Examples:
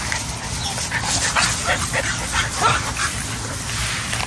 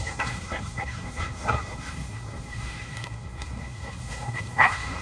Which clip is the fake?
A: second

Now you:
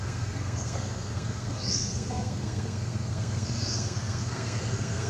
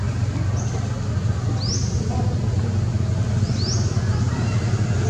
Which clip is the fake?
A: first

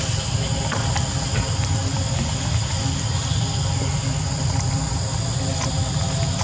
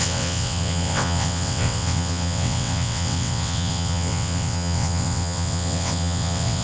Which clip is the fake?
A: second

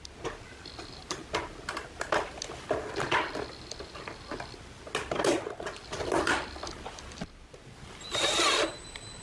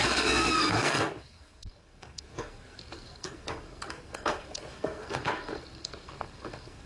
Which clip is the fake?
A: second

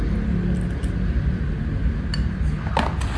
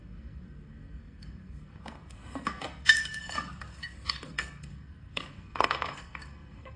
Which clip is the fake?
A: second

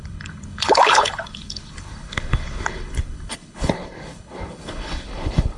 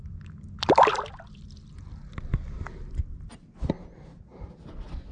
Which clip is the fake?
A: first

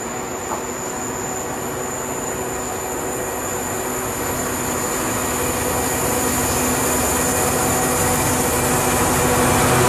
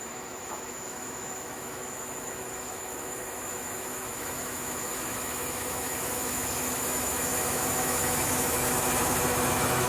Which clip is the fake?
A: second